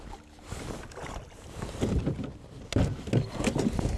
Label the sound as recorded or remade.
recorded